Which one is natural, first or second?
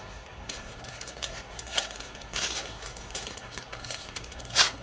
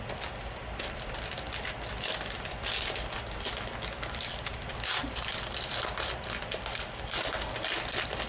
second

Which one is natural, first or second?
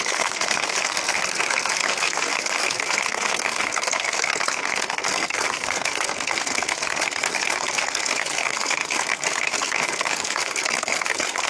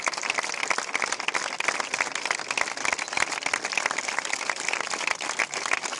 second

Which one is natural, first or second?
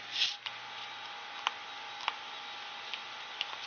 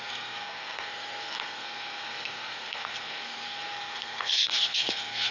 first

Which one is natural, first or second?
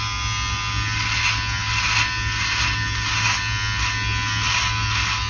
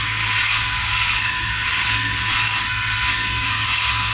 first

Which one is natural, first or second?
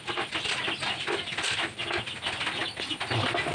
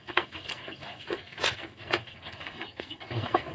first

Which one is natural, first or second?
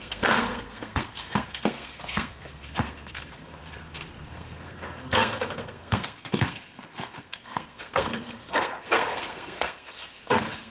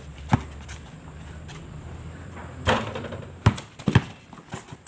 second